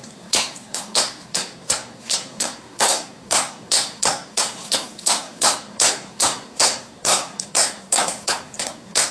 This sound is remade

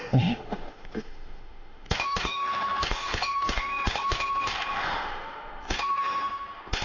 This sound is remade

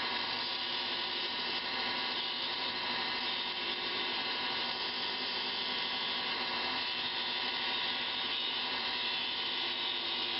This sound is remade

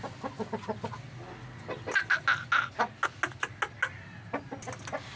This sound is recorded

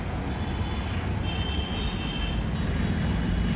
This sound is recorded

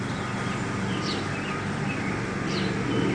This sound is recorded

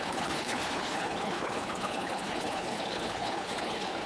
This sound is remade